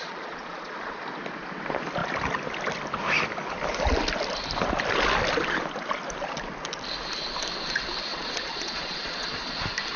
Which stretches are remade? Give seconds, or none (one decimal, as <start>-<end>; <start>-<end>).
0.0-1.0; 8.1-9.6